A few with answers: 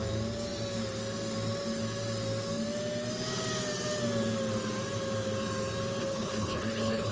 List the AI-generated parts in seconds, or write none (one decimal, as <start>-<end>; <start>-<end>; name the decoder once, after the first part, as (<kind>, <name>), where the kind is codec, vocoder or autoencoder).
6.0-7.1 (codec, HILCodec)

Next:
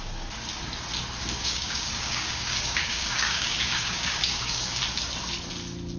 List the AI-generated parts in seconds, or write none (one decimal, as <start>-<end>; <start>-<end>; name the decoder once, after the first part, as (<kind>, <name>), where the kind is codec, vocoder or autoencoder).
1.2-4.8 (codec, DAC)

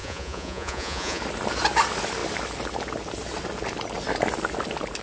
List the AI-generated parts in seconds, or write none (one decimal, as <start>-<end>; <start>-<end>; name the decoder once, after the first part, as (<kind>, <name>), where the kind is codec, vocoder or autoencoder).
0.0-1.2 (vocoder, Vocos)

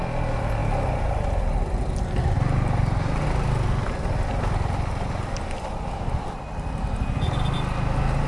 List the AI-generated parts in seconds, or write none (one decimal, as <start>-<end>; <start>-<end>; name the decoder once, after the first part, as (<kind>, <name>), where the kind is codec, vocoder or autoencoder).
none

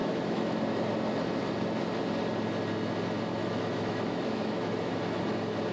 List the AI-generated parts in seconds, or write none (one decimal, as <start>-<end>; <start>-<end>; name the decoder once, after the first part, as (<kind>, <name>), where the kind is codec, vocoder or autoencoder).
0.0-0.6 (autoencoder, DAC-VAE); 3.4-5.2

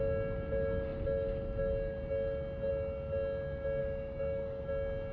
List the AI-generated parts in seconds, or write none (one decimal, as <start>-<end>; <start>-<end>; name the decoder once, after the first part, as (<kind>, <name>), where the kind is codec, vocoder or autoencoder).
3.8-4.6 (autoencoder, DAC-VAE)